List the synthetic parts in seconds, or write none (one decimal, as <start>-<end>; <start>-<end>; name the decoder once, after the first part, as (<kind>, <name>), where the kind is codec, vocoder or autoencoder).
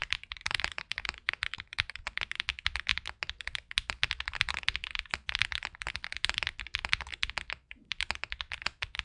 0.0-2.0 (vocoder, BigVGAN v2)